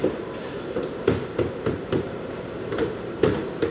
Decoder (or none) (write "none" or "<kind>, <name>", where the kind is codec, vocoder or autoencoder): vocoder, BigVGAN v2